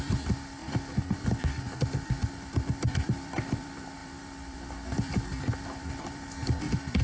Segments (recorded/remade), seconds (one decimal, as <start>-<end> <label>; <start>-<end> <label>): 0.0-7.0 remade